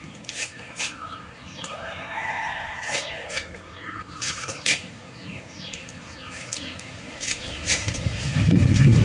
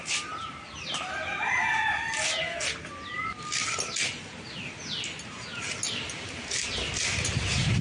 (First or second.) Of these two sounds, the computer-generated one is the first